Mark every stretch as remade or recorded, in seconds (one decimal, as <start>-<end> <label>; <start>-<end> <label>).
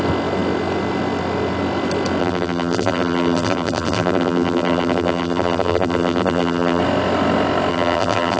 0.0-2.2 recorded; 2.2-6.8 remade; 6.8-7.7 recorded; 7.7-8.4 remade